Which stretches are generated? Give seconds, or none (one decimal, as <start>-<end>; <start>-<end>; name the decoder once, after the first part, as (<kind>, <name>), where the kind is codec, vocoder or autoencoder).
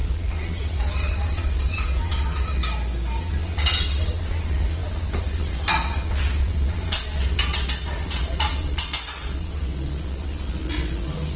0.0-2.6 (vocoder, Vocos); 3.2-11.4